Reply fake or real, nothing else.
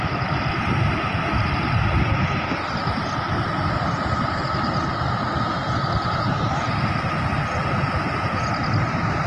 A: real